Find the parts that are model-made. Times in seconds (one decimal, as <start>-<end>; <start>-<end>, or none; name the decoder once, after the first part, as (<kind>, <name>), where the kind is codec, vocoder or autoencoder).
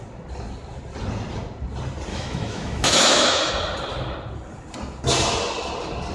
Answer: 2.1-3.5 (autoencoder, DAC-VAE)